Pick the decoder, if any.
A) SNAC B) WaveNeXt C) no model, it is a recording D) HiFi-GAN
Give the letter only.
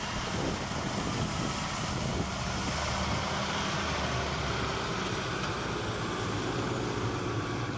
C